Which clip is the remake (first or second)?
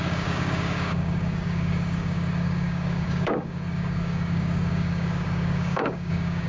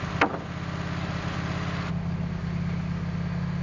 first